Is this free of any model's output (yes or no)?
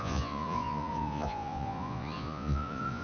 no